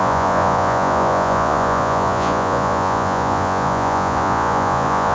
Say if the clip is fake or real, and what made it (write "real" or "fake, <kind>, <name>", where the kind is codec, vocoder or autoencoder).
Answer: fake, vocoder, Vocos